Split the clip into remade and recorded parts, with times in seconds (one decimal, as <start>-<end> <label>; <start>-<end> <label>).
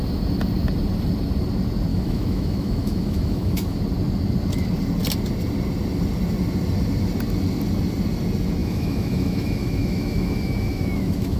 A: 0.0-1.9 recorded; 1.9-3.8 remade; 3.8-8.6 recorded; 8.6-11.4 remade